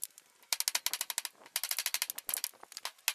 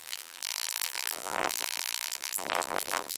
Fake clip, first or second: second